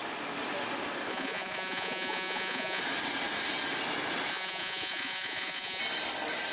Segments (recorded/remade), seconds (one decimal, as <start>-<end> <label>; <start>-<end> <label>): 0.0-1.1 recorded; 1.1-2.8 remade; 2.8-4.3 recorded; 4.3-5.8 remade; 5.8-6.5 recorded